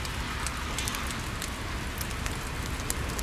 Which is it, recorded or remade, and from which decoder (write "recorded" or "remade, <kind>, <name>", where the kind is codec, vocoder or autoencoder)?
recorded